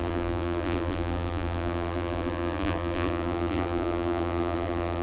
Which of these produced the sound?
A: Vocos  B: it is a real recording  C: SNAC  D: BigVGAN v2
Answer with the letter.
D